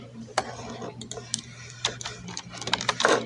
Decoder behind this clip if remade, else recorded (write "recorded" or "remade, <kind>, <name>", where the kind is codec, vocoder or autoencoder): recorded